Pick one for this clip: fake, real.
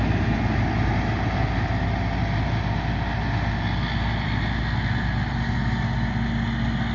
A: real